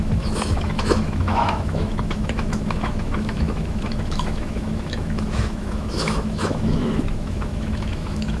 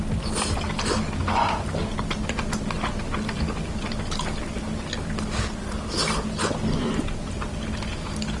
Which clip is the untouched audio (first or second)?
second